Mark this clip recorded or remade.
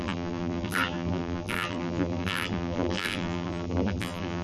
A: remade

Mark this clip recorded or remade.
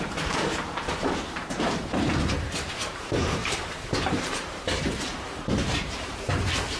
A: remade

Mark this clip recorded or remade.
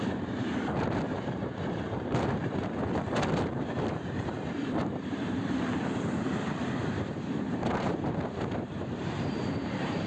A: remade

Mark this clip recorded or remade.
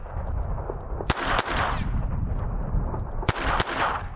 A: recorded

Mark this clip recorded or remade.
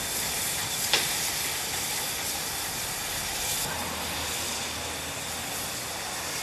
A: recorded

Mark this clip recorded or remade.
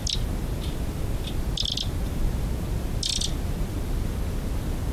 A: recorded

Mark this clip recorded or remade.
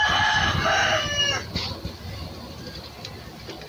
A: recorded